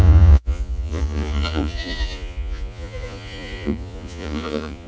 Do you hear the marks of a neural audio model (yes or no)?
yes